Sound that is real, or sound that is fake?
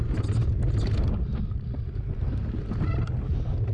real